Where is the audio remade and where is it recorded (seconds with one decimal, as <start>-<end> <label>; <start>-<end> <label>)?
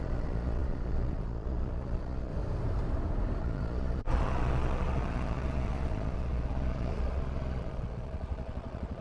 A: 0.0-2.3 remade; 2.3-3.4 recorded; 3.4-9.0 remade